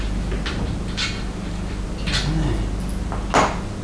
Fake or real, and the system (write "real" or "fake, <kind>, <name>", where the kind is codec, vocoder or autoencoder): real